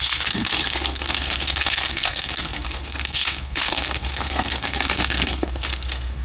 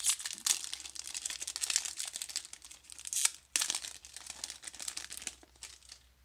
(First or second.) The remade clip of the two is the first